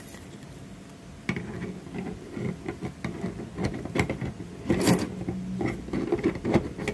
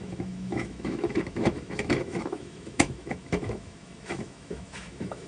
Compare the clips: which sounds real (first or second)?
first